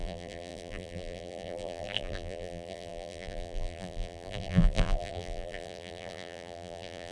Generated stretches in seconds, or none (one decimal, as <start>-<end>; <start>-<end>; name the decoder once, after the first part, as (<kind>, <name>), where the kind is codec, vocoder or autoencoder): 0.0-7.1 (vocoder, BigVGAN v2)